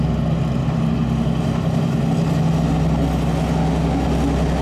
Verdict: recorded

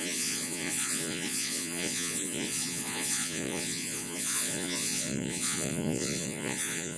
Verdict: remade